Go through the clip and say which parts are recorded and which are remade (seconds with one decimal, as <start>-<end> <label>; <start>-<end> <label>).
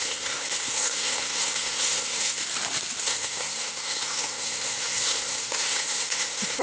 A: 0.0-2.4 remade; 2.4-3.0 recorded; 3.0-6.6 remade